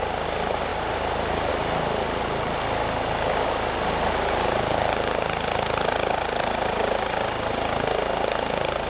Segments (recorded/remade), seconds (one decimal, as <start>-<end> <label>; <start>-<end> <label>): 0.0-0.7 recorded; 0.7-1.5 remade; 1.5-8.9 recorded